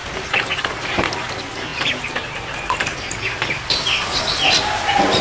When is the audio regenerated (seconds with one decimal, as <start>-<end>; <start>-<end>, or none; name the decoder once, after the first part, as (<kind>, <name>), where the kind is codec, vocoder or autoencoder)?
none